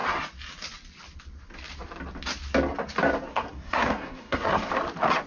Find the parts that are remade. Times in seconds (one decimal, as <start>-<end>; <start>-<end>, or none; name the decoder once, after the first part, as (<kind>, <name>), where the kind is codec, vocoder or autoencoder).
3.3-4.7 (codec, SNAC)